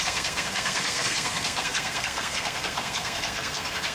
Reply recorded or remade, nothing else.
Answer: remade